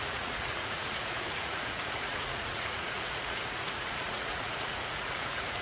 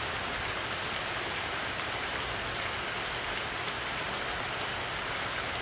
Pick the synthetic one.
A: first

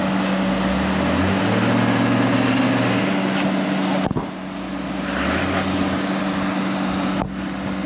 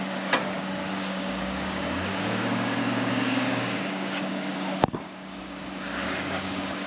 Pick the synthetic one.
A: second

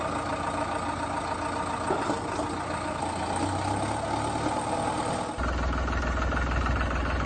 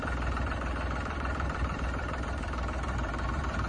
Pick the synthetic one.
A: second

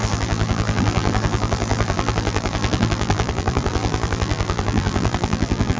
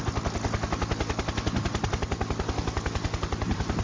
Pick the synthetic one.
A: first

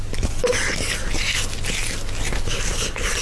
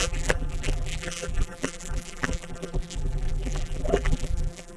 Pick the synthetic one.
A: second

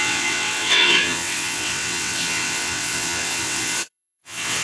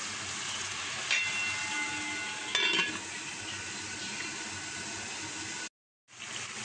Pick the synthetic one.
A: first